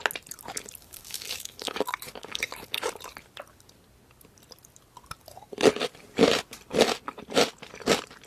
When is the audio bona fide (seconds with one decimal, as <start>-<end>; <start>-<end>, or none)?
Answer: 0.0-0.8; 2.9-8.3